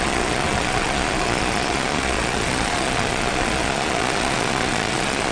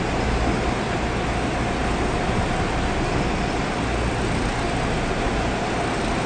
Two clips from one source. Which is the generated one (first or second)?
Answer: first